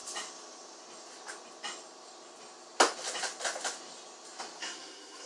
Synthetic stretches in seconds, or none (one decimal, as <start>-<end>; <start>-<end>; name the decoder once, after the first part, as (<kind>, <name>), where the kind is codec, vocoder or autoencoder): 4.6-5.3 (codec, SNAC)